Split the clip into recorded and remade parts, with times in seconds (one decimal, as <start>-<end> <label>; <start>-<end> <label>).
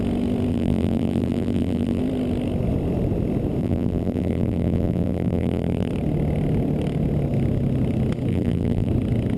0.0-0.5 recorded; 0.5-2.0 remade; 2.0-3.6 recorded; 3.6-5.9 remade; 5.9-8.3 recorded; 8.3-8.9 remade; 8.9-9.4 recorded